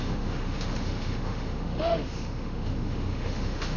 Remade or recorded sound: remade